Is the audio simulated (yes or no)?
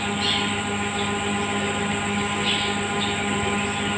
no